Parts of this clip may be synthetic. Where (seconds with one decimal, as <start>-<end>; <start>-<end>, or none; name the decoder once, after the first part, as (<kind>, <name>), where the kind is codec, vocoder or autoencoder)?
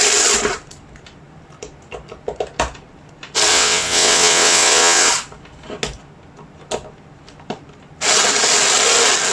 3.5-5.1 (vocoder, WaveNeXt)